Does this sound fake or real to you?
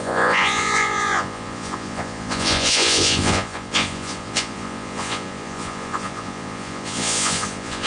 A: fake